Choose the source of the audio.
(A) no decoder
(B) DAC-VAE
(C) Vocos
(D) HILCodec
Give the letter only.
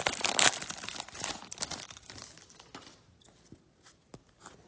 A